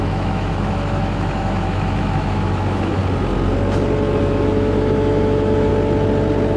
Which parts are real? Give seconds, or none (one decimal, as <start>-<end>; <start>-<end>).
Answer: 3.0-4.2; 5.7-6.6